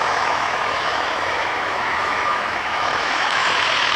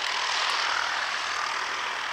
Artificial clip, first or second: first